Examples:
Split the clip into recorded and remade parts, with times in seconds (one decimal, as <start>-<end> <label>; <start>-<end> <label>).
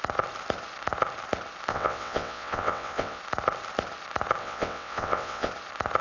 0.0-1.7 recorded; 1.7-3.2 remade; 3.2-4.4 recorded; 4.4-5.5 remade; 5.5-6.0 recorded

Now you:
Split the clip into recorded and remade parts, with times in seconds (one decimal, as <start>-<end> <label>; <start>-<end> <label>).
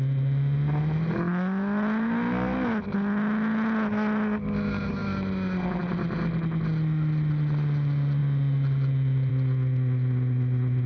0.0-10.9 recorded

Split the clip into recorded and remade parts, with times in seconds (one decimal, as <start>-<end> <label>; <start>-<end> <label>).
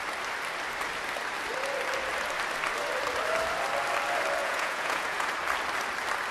0.0-4.4 recorded; 4.4-5.3 remade; 5.3-6.3 recorded